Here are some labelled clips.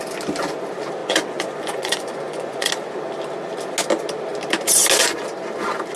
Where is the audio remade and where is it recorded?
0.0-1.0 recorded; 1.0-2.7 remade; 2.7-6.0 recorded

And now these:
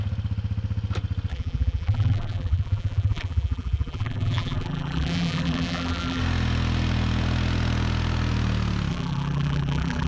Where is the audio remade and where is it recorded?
0.0-1.3 recorded; 1.3-6.2 remade; 6.2-8.9 recorded; 8.9-10.1 remade

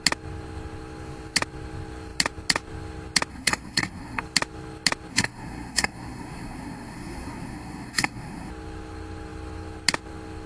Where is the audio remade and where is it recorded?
0.0-3.3 recorded; 3.3-4.2 remade; 4.2-5.1 recorded; 5.1-8.5 remade; 8.5-10.5 recorded